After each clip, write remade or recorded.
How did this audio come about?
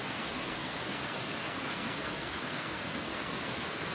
remade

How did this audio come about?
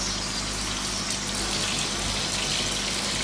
recorded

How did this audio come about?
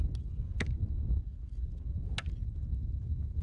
recorded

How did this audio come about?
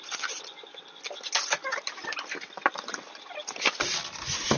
recorded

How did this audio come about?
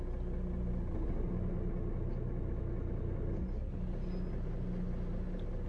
recorded